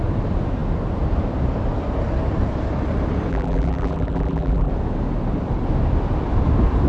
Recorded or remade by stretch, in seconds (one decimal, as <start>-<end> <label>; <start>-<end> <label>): 0.0-3.3 recorded; 3.3-4.7 remade; 4.7-6.9 recorded